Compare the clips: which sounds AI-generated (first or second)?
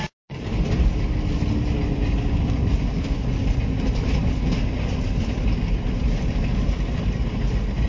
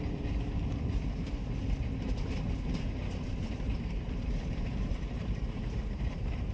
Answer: second